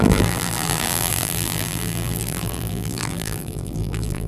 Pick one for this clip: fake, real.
fake